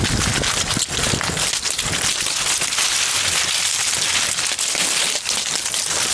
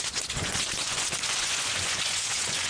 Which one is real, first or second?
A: first